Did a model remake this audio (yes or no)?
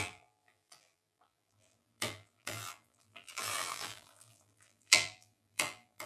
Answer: yes